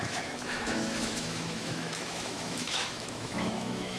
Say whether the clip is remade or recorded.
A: remade